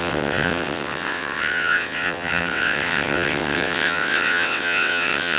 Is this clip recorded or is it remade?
remade